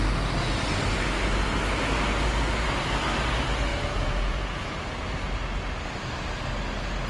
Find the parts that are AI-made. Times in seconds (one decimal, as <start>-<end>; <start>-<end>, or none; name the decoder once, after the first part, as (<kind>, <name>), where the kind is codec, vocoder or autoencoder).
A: 3.7-4.6 (vocoder, Vocos)